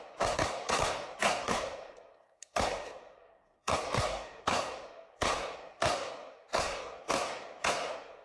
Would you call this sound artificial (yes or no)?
yes